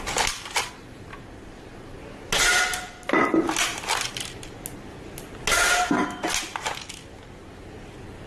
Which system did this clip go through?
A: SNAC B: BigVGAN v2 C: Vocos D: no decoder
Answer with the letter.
D